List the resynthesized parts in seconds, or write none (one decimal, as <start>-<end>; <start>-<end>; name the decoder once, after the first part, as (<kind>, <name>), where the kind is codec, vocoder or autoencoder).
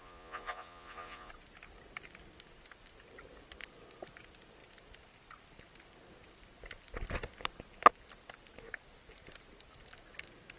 0.0-1.3 (vocoder, Vocos)